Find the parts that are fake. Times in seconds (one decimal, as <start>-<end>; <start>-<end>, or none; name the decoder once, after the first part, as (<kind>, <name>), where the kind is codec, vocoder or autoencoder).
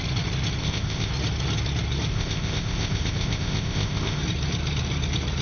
0.6-1.1 (codec, ZipCodec); 2.1-4.2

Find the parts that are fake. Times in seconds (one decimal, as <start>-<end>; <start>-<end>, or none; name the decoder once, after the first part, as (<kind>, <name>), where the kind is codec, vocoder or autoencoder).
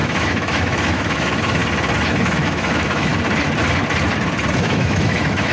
0.0-1.6 (autoencoder, DAC-VAE); 2.2-3.1; 4.6-5.5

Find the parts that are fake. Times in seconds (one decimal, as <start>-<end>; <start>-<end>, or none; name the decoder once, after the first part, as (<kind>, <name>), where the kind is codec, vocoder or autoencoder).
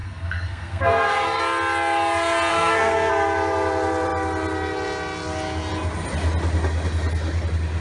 0.0-1.4 (codec, SNAC); 2.5-3.1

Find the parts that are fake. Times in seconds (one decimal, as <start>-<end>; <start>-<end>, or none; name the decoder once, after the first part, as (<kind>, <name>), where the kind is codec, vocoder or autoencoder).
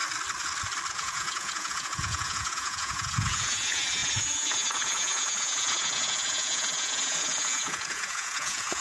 0.9-8.8 (vocoder, Vocos)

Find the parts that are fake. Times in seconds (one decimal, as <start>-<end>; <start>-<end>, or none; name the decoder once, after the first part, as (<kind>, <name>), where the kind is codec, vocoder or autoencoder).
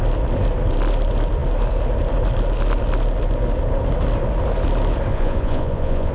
5.1-6.1 (vocoder, Vocos)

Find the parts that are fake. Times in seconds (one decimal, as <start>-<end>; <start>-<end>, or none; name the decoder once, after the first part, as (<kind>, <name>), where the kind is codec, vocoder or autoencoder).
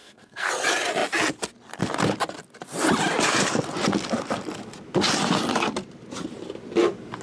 0.0-0.5 (codec, SNAC)